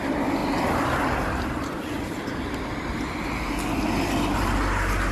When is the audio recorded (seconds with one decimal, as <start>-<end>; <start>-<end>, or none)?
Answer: 0.0-5.1

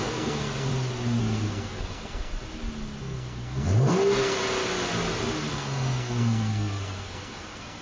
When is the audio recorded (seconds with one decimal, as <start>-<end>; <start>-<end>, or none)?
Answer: 0.7-1.2; 2.3-3.0; 4.4-5.5

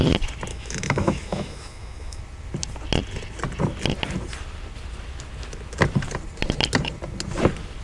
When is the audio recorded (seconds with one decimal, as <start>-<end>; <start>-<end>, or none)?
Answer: 0.0-0.5; 2.2-7.8

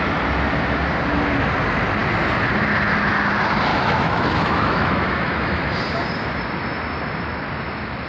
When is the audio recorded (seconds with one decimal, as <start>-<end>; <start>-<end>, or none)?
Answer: 0.0-3.7; 5.8-8.1

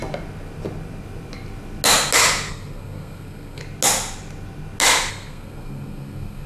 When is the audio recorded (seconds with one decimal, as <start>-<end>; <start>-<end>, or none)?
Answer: 0.0-2.5; 3.6-5.1

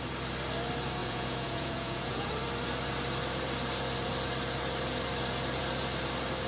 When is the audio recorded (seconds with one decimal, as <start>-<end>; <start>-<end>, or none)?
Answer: 0.0-1.0; 2.3-6.5

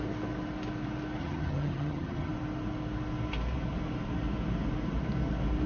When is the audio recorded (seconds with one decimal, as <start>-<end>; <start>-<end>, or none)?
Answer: 0.0-1.2; 2.3-5.7